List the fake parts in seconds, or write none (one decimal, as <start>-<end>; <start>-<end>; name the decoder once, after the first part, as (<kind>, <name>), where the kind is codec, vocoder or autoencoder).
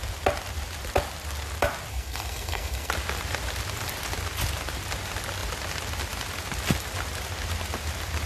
1.9-2.9 (codec, SNAC)